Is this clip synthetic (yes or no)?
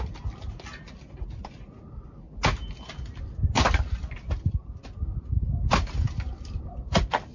no